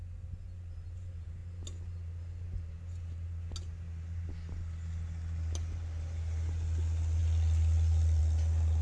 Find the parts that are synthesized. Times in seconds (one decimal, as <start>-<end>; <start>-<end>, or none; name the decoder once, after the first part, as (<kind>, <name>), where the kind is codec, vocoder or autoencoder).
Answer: none